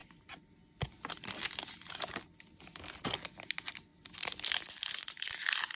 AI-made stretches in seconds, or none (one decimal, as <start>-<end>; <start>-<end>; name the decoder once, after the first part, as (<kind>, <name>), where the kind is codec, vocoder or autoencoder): none